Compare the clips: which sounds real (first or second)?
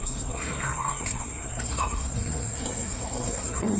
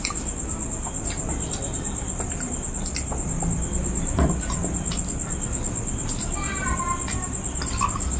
second